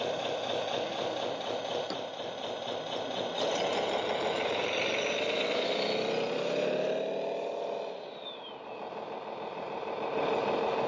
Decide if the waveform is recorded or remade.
recorded